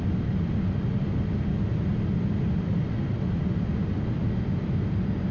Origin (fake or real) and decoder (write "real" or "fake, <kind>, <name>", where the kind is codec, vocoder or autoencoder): real